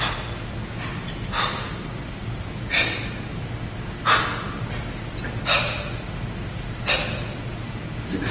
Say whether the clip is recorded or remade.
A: recorded